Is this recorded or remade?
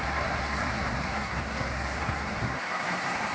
remade